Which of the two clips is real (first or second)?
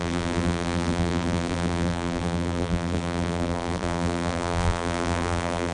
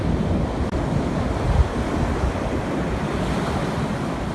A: second